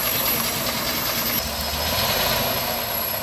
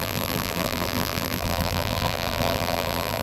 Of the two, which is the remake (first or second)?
second